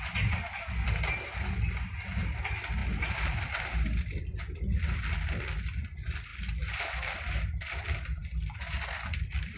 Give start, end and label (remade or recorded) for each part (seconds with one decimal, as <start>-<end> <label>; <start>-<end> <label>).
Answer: 0.0-2.8 recorded; 2.8-4.2 remade; 4.2-6.3 recorded; 6.3-7.3 remade; 7.3-9.6 recorded